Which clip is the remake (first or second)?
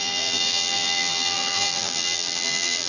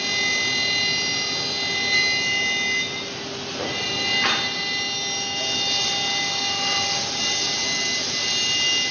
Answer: first